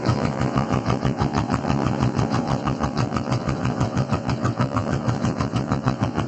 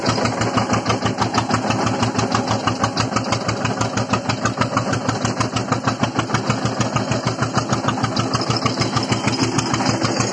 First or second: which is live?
second